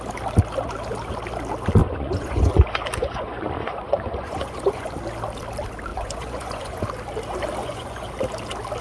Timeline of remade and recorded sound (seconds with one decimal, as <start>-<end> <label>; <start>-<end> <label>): 0.0-1.8 recorded; 1.8-2.5 remade; 2.5-3.0 recorded; 3.0-4.9 remade; 4.9-5.9 recorded; 5.9-6.8 remade; 6.8-7.6 recorded; 7.6-8.1 remade; 8.1-8.8 recorded